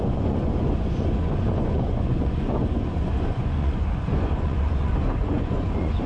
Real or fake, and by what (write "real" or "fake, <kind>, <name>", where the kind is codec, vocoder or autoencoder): fake, vocoder, Vocos